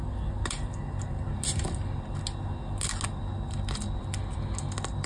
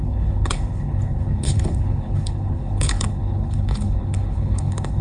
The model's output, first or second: second